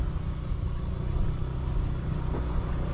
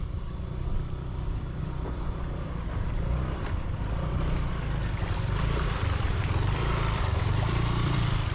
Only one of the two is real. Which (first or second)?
first